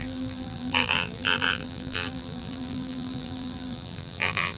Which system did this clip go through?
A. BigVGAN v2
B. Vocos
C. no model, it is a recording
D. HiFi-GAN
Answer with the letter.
A